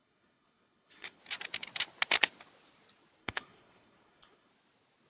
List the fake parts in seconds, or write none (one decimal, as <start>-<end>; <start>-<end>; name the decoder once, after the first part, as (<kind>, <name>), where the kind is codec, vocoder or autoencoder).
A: 0.0-1.2 (codec, HILCodec); 3.2-4.5